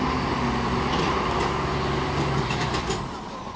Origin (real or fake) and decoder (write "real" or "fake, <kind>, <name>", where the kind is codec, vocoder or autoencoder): fake, vocoder, BigVGAN v2